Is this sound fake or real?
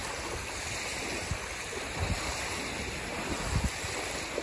real